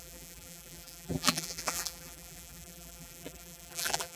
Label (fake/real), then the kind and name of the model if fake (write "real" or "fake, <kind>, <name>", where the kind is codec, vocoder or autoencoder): fake, vocoder, BigVGAN v2